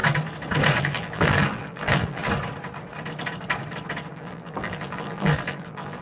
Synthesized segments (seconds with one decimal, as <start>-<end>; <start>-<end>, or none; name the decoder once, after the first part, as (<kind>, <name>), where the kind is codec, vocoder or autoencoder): 0.8-2.2 (vocoder, BigVGAN v2); 4.1-6.0